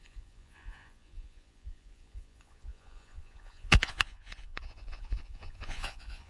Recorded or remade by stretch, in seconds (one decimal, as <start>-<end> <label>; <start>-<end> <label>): 0.0-6.3 remade